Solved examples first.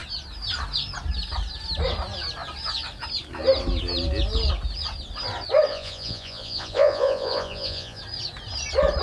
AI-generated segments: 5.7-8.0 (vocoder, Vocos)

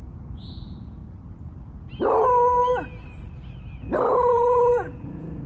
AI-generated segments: 0.0-1.0 (vocoder, Vocos); 4.3-5.5

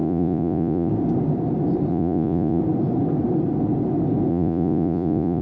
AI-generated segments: 0.0-0.9 (vocoder, Vocos); 1.9-2.6; 4.3-5.4

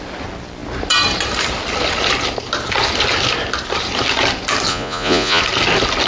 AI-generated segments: 4.7-5.4 (vocoder, Vocos)

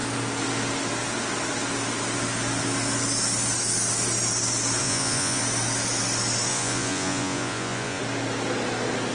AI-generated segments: 4.8-5.4 (vocoder, Vocos); 6.5-8.0